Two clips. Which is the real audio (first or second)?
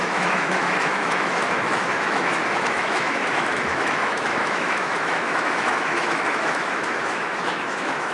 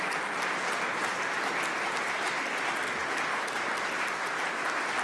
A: second